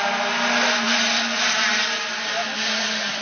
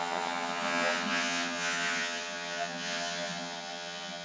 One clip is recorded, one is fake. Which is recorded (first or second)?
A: first